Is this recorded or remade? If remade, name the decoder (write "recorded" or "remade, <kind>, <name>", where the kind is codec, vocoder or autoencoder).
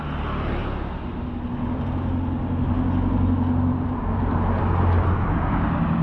recorded